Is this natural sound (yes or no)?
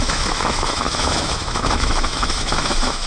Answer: no